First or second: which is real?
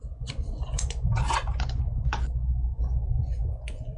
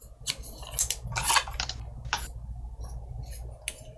second